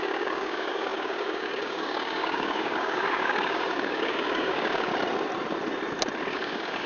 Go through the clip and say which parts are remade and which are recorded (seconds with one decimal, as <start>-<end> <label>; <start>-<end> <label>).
0.0-4.9 remade; 4.9-6.3 recorded; 6.3-6.9 remade